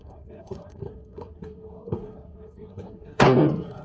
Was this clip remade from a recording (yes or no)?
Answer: yes